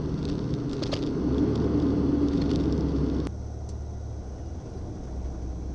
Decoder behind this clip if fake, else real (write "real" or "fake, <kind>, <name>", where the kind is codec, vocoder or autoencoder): real